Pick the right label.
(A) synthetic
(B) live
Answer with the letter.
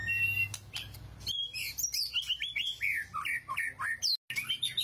B